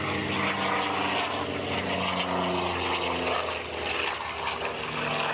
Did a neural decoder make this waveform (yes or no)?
no